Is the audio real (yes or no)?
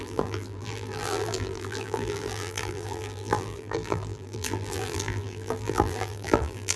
no